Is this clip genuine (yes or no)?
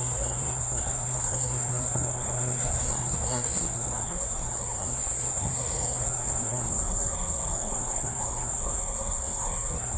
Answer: no